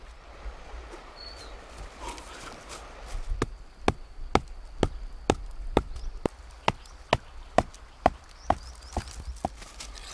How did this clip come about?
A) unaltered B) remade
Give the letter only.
A